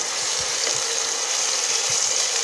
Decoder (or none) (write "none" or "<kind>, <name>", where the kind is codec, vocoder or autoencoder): none